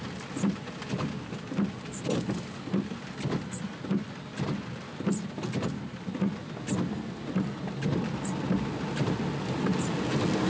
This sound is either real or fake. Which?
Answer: real